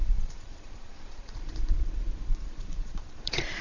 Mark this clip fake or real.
fake